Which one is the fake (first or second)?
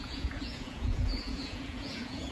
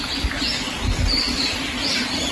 first